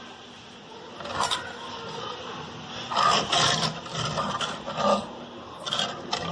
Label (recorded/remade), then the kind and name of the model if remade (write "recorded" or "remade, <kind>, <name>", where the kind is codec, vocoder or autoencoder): recorded